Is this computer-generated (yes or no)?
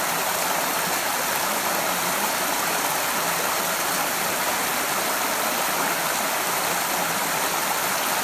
no